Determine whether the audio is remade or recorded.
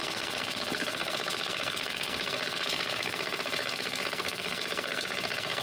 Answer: remade